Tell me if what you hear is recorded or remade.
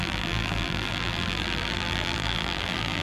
remade